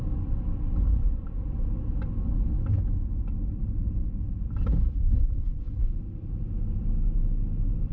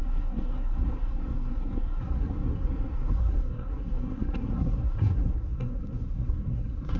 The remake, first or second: second